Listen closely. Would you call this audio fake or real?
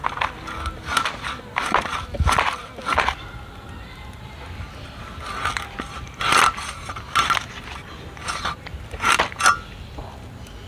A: real